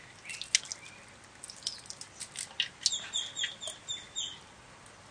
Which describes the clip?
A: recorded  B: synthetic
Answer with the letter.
A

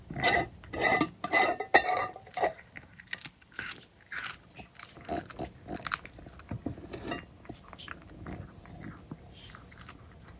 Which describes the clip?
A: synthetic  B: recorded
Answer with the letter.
B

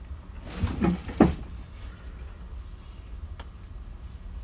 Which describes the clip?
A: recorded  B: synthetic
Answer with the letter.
A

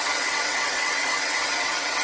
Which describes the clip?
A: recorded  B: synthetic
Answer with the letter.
B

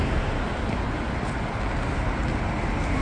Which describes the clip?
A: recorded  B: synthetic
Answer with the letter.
A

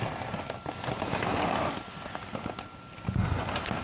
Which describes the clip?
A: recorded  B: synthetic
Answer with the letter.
A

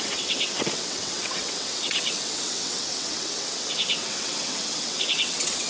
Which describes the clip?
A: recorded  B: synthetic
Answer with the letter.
B